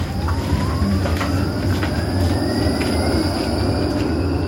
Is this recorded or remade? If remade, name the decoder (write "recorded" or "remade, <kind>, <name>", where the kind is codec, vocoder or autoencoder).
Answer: recorded